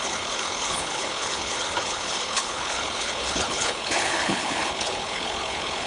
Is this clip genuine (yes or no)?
no